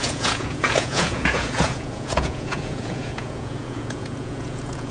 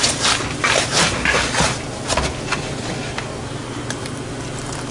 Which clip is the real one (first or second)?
second